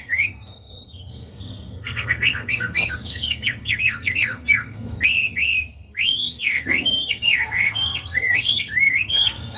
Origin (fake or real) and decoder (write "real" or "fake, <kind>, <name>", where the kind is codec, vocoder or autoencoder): fake, codec, SNAC